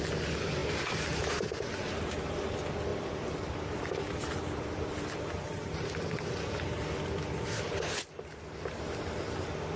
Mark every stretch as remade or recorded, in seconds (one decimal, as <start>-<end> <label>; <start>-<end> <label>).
0.0-2.9 recorded; 2.9-6.2 remade; 6.2-9.8 recorded